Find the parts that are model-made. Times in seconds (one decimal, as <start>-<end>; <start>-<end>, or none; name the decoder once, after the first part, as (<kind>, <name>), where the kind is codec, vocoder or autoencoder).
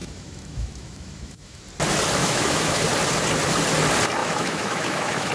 0.0-1.6 (autoencoder, DAC-VAE); 2.2-2.8; 4.2-5.3